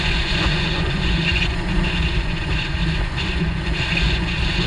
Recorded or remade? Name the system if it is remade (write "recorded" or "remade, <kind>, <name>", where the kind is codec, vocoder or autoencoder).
remade, vocoder, Vocos